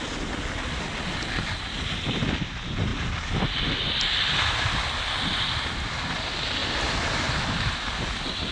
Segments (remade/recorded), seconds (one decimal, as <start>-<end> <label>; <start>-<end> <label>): 0.0-8.5 recorded